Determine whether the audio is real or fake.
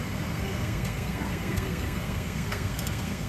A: fake